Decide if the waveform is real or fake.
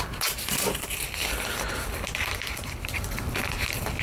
real